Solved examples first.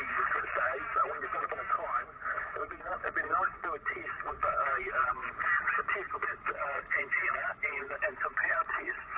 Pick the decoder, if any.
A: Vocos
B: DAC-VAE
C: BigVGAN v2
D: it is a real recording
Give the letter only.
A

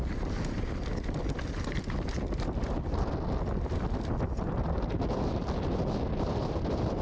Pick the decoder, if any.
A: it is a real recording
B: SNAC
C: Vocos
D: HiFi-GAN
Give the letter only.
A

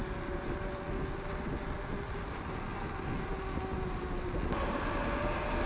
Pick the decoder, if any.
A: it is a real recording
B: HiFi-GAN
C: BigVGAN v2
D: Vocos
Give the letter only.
A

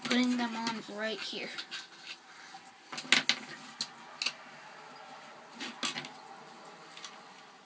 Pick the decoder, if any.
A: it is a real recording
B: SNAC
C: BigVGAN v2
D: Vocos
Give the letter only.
A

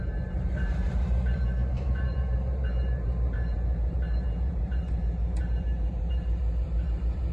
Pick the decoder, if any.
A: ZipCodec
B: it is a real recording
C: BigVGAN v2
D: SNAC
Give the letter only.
C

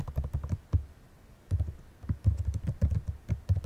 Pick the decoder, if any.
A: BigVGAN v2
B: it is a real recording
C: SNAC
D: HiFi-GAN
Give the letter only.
B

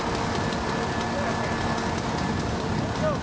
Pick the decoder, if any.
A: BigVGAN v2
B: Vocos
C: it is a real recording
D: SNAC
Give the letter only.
C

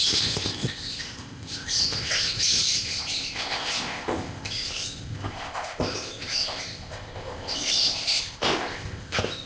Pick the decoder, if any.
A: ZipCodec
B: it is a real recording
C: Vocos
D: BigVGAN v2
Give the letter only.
A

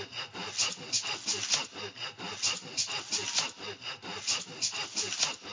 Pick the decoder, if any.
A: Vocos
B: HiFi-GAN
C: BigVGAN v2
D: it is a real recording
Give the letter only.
D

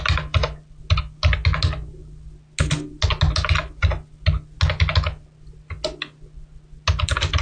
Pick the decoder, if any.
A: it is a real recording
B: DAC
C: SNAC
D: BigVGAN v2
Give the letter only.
A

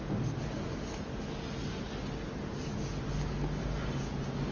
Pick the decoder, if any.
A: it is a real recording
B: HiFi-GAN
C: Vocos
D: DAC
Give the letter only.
A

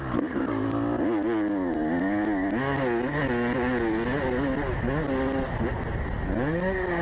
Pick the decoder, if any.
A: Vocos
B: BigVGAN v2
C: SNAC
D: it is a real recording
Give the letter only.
D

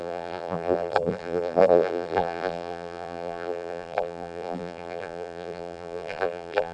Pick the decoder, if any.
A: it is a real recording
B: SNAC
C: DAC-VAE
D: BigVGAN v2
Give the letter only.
D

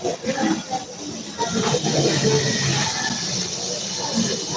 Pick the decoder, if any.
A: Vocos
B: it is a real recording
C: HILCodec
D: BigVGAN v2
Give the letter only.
B